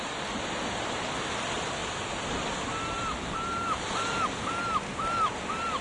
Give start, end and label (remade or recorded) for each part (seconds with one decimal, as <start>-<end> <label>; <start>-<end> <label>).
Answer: 0.0-1.8 recorded; 1.8-4.2 remade; 4.2-5.8 recorded